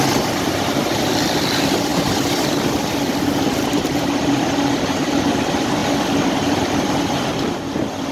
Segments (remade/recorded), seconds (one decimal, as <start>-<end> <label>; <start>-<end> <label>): 0.0-1.9 recorded; 1.9-4.5 remade; 4.5-5.8 recorded; 5.8-7.0 remade; 7.0-8.1 recorded